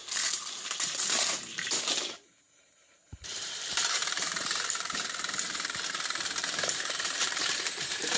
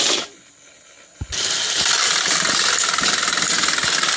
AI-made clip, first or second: first